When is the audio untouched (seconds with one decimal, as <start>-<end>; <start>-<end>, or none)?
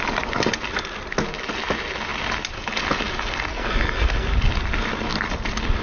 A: 0.0-3.5; 4.3-5.8